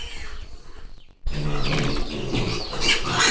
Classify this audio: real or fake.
real